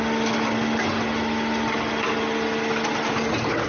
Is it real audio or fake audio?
real